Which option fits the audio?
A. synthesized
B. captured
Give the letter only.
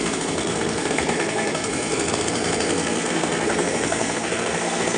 A